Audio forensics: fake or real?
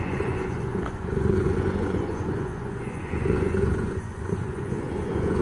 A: fake